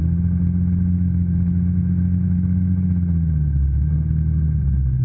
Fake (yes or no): no